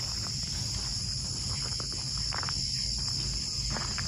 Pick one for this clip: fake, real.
real